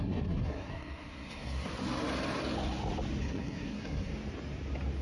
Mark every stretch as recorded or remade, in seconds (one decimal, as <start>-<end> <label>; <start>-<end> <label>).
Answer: 0.0-1.7 remade; 1.7-3.2 recorded; 3.2-4.1 remade; 4.1-5.0 recorded